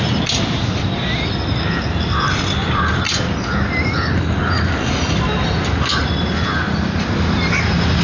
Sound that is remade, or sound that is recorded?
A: recorded